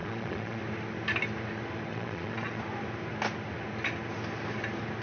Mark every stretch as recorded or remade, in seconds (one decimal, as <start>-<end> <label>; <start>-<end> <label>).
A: 0.0-0.6 remade; 0.6-1.9 recorded; 1.9-2.6 remade; 2.6-5.0 recorded